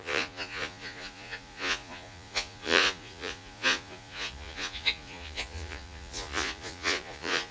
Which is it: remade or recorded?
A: remade